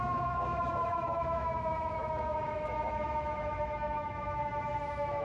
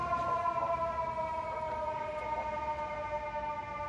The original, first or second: second